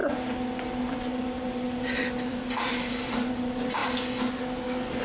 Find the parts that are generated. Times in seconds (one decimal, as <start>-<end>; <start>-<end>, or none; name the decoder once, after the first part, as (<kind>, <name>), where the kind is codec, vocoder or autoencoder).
0.8-3.8 (vocoder, BigVGAN v2)